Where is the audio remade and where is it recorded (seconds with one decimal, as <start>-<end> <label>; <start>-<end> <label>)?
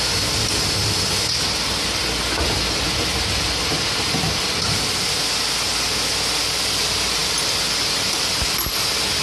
0.0-9.2 recorded